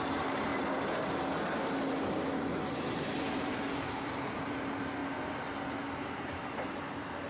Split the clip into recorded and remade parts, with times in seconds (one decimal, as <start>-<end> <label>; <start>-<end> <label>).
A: 0.0-0.5 remade; 0.5-2.7 recorded; 2.7-5.0 remade; 5.0-6.0 recorded; 6.0-7.3 remade